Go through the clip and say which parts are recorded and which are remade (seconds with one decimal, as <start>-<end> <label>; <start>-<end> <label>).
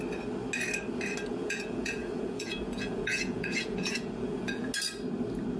0.0-1.3 recorded; 1.3-4.7 remade; 4.7-5.6 recorded